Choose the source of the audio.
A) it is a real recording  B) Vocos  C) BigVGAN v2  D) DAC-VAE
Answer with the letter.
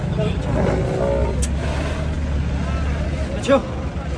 A